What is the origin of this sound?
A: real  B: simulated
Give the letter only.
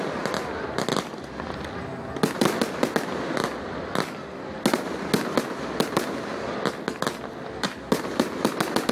A